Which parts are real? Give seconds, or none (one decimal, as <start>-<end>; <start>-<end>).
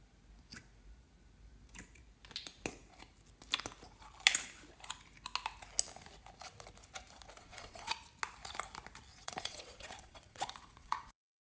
0.0-7.4; 7.9-9.1